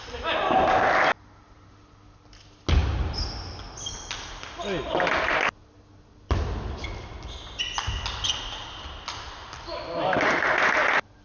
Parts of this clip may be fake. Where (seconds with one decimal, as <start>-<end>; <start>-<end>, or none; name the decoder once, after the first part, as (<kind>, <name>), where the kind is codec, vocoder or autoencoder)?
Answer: none